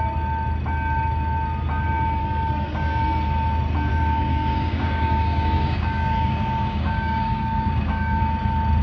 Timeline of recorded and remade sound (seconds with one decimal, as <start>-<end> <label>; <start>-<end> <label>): 0.0-2.2 recorded; 2.2-3.0 remade; 3.0-3.9 recorded; 3.9-8.2 remade; 8.2-8.8 recorded